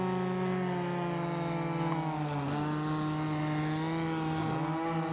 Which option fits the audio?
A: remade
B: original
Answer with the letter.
B